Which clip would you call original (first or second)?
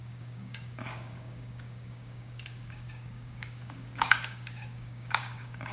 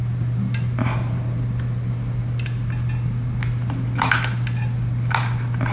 second